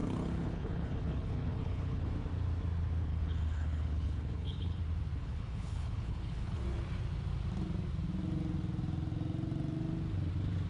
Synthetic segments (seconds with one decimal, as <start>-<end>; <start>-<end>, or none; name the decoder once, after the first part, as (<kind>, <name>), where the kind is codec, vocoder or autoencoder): 0.0-2.1 (codec, HILCodec); 3.1-4.8; 5.2-6.6